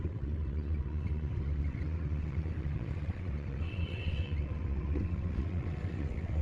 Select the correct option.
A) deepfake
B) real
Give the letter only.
A